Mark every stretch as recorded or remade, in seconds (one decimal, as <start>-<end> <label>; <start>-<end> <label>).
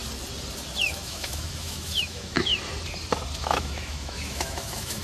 0.0-0.9 recorded; 0.9-2.5 remade; 2.5-3.4 recorded; 3.4-5.0 remade